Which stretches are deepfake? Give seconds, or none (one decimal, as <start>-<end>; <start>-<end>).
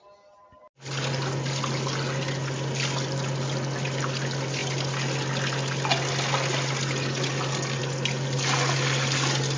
none